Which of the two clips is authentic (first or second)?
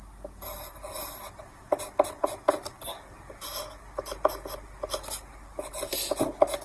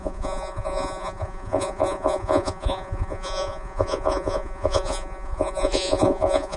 first